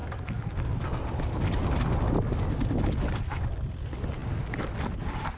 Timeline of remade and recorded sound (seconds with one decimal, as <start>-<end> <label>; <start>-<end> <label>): 0.0-5.4 recorded